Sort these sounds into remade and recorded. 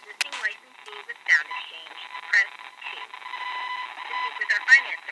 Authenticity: recorded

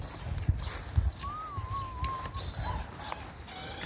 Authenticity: recorded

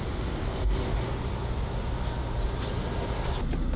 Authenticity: recorded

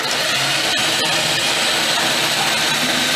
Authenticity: recorded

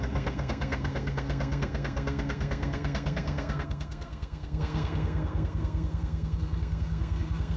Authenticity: remade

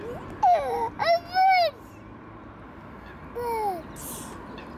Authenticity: recorded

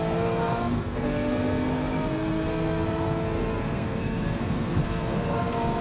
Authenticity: remade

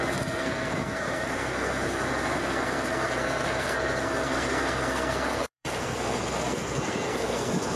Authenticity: remade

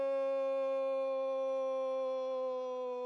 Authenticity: recorded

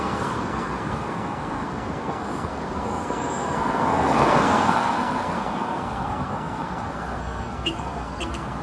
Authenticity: remade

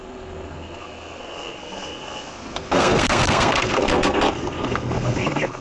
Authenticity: remade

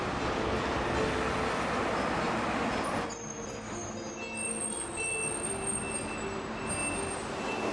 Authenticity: recorded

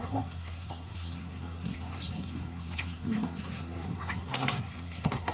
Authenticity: remade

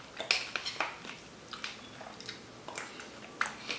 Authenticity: recorded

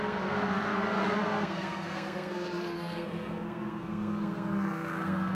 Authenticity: remade